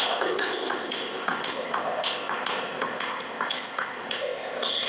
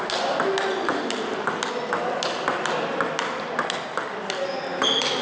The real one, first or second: second